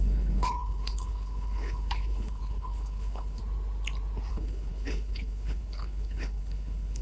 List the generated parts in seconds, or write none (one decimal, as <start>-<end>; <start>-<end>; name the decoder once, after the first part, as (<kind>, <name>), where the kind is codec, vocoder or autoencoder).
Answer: 0.0-3.4 (codec, HILCodec); 4.3-7.0